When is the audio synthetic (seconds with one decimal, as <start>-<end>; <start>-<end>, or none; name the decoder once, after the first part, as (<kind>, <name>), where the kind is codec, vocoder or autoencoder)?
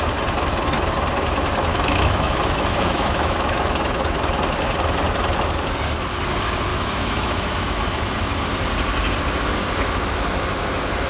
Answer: 1.7-4.2 (autoencoder, DAC-VAE); 6.7-8.1